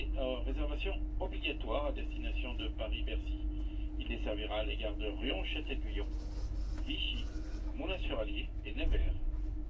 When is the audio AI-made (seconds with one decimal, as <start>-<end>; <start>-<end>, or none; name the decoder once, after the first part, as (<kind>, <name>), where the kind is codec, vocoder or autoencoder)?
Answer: 7.6-9.1 (autoencoder, DAC-VAE)